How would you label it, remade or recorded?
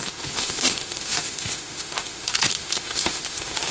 remade